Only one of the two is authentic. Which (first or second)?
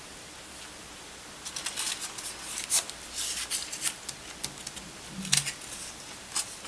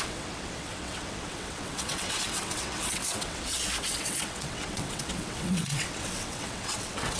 first